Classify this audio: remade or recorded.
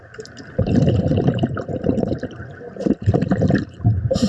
remade